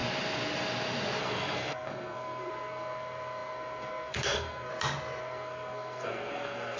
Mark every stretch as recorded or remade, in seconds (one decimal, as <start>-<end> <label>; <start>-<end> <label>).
0.0-1.2 recorded; 1.2-4.7 remade; 4.7-5.2 recorded; 5.2-6.8 remade